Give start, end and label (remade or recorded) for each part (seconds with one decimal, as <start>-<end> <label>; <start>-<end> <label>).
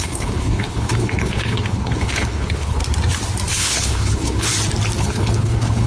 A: 0.0-2.8 remade; 2.8-3.5 recorded; 3.5-4.5 remade; 4.5-5.0 recorded; 5.0-5.9 remade